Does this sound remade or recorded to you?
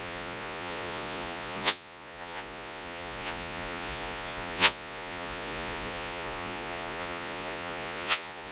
remade